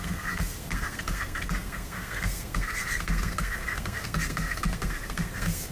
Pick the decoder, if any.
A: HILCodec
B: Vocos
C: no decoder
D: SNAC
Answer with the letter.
D